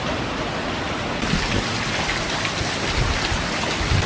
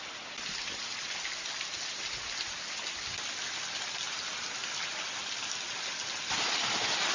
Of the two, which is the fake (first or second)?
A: first